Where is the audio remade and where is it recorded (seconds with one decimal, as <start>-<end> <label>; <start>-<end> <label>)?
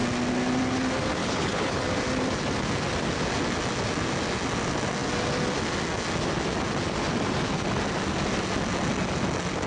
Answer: 0.0-1.2 recorded; 1.2-1.8 remade; 1.8-9.7 recorded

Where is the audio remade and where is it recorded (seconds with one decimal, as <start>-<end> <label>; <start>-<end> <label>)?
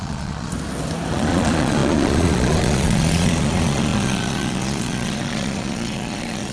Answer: 0.0-0.5 remade; 0.5-1.1 recorded; 1.1-6.5 remade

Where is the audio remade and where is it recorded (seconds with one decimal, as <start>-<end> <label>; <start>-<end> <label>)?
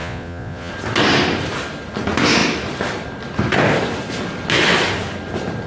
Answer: 0.0-0.7 remade; 0.7-5.7 recorded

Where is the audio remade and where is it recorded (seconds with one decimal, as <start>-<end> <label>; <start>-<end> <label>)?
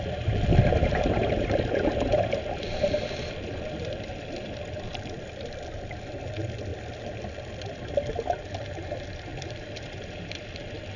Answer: 0.0-1.2 recorded; 1.2-3.2 remade; 3.2-9.3 recorded; 9.3-10.3 remade; 10.3-11.0 recorded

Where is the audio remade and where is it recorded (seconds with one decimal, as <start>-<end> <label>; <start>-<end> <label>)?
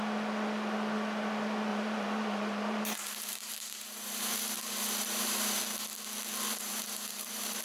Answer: 0.0-1.7 recorded; 1.7-5.6 remade; 5.6-6.5 recorded; 6.5-7.6 remade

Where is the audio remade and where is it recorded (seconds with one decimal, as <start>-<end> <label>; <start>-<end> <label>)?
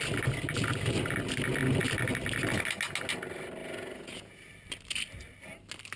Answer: 0.0-3.6 recorded; 3.6-4.5 remade; 4.5-6.0 recorded